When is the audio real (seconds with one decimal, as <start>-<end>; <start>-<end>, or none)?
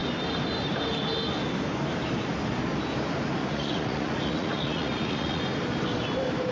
0.0-3.4; 5.4-6.5